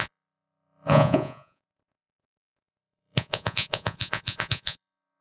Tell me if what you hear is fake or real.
fake